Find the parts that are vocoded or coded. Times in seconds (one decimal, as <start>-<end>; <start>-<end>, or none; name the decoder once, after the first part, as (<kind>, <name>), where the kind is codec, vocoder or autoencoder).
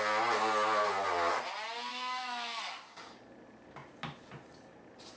1.9-2.6 (autoencoder, DAC-VAE)